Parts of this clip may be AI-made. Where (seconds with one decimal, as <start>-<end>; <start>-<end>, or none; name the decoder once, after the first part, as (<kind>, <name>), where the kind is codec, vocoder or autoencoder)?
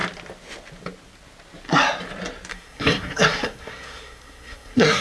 2.5-5.0 (codec, SNAC)